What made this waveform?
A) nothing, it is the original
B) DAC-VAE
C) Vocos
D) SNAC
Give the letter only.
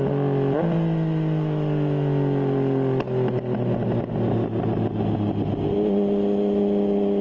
A